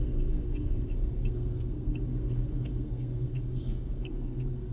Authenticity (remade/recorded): remade